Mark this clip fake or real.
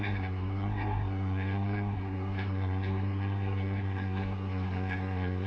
fake